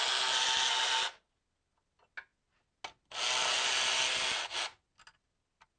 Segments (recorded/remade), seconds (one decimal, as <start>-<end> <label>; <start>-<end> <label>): 0.0-5.8 recorded